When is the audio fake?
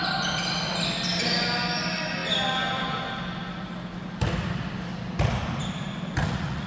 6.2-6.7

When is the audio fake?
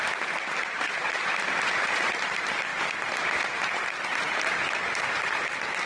0.0-2.7; 3.8-5.9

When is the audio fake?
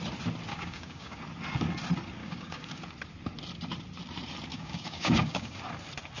0.5-1.2; 2.2-2.8; 4.5-5.6